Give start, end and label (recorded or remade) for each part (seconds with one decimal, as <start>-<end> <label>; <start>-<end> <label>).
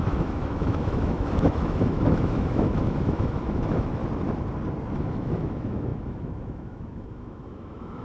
0.0-4.0 remade; 4.0-5.0 recorded; 5.0-8.0 remade